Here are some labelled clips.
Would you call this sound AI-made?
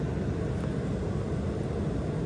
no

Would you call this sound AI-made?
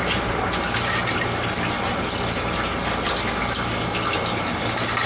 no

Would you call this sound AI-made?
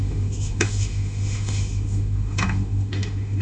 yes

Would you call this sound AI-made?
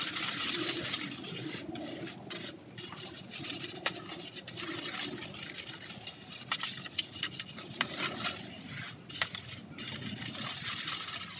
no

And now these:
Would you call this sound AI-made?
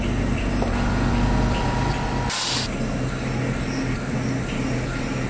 no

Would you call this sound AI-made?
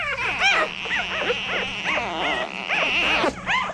yes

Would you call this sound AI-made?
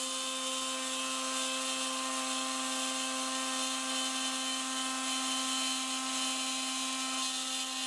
no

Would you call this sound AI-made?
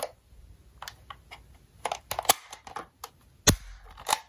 no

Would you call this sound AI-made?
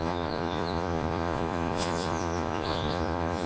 yes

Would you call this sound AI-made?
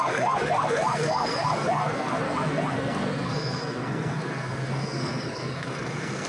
yes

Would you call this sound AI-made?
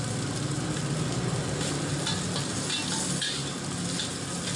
no